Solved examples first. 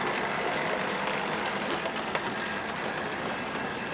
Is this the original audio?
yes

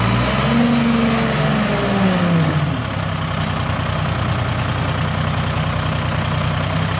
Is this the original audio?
yes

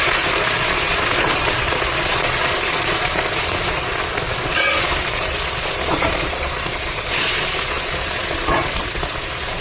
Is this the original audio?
no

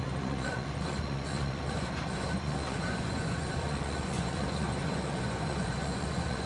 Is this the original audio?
no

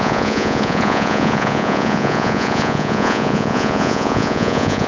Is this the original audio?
no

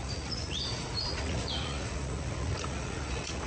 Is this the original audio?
no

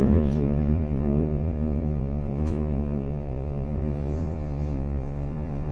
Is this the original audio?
no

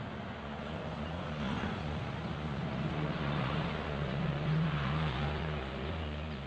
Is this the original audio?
no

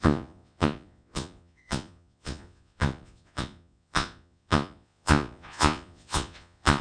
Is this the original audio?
no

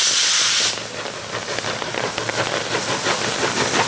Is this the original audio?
yes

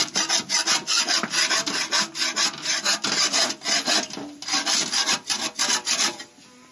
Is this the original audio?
yes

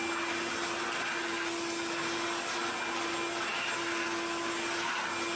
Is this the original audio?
yes